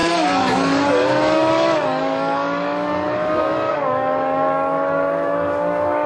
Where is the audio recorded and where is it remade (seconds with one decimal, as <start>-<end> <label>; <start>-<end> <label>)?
0.0-6.1 remade